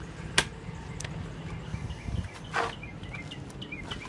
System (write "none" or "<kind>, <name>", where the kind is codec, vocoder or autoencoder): none